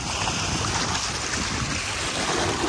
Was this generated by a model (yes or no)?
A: no